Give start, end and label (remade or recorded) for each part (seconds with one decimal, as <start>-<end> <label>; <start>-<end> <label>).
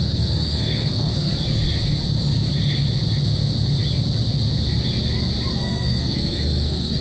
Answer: 0.0-1.3 remade; 1.3-5.5 recorded; 5.5-7.0 remade